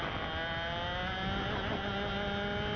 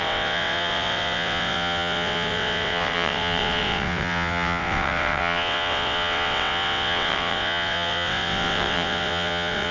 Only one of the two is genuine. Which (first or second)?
first